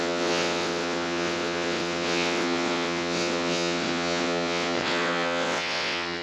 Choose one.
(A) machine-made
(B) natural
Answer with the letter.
A